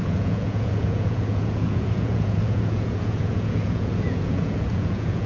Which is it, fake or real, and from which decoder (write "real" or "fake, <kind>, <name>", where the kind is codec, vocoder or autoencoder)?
fake, vocoder, Vocos